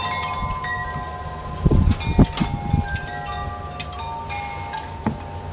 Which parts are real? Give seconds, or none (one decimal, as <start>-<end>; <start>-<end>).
0.0-5.5

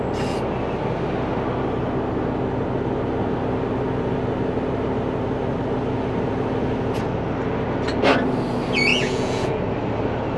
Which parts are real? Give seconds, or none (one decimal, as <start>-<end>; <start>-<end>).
0.0-8.9; 9.6-10.4

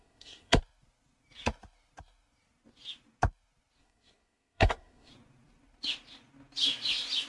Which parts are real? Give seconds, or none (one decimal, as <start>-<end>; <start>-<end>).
0.6-3.8; 5.1-7.3

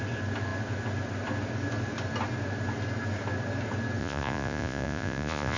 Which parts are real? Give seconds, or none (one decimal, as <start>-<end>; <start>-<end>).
0.0-4.0

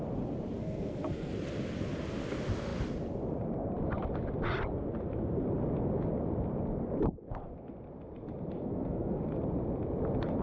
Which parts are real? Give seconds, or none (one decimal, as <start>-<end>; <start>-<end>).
0.0-0.6; 1.3-8.6; 9.2-10.4